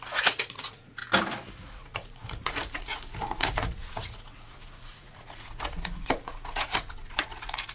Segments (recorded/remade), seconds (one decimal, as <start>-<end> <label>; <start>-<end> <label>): 0.0-1.0 remade; 1.0-1.6 recorded; 1.6-7.7 remade

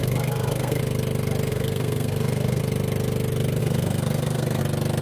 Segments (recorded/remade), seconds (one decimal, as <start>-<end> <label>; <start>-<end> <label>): 0.0-0.8 remade; 0.8-1.5 recorded; 1.5-2.6 remade; 2.6-3.6 recorded; 3.6-4.6 remade; 4.6-5.0 recorded

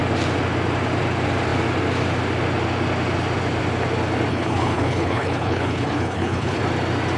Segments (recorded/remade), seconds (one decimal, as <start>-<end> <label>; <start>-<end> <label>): 0.0-4.3 recorded; 4.3-6.6 remade; 6.6-7.2 recorded

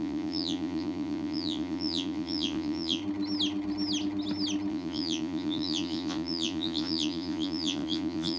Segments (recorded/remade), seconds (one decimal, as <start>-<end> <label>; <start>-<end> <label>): 0.0-3.0 remade; 3.0-4.7 recorded; 4.7-8.4 remade

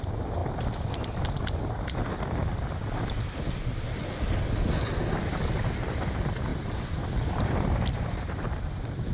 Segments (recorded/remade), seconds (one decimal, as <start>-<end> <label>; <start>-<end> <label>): 0.0-6.5 recorded; 6.5-9.1 remade

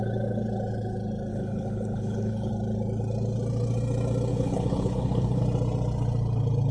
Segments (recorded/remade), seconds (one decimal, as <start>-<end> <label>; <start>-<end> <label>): 0.0-1.3 recorded; 1.3-2.5 remade; 2.5-4.3 recorded; 4.3-5.4 remade; 5.4-6.7 recorded